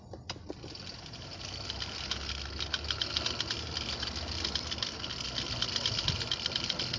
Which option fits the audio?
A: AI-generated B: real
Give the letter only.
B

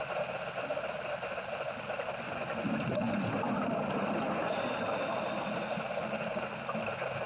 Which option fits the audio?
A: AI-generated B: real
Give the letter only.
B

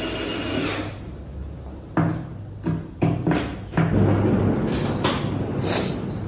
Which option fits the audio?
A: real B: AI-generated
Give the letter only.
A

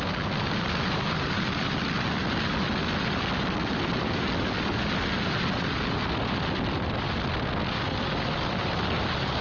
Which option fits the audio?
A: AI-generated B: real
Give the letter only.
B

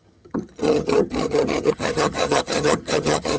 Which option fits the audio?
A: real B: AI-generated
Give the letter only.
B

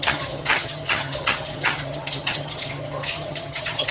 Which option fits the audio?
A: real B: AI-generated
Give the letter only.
B